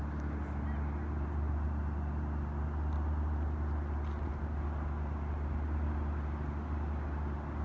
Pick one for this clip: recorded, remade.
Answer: recorded